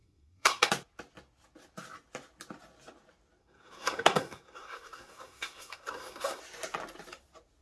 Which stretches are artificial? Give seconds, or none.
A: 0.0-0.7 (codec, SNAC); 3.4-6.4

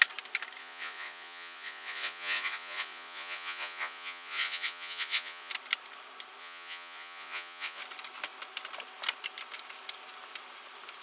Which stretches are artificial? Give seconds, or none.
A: 0.6-5.5 (vocoder, Vocos); 6.4-7.8